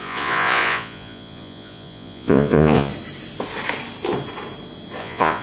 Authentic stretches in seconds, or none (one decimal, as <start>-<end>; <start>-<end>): 2.9-5.0